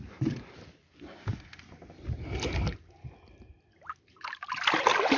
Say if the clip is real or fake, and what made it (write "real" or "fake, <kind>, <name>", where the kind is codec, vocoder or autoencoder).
real